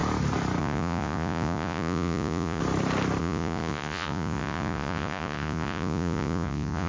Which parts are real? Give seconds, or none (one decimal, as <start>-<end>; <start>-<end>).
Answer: 0.0-0.6; 2.6-3.2